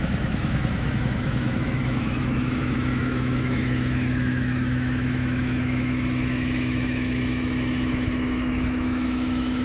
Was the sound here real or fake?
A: fake